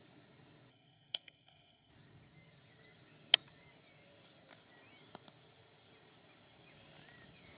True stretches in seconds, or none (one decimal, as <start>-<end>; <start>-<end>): 0.0-0.7; 1.9-7.6